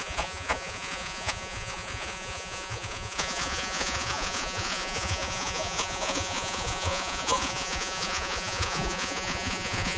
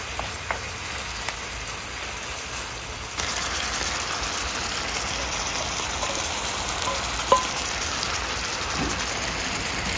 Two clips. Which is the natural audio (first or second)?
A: second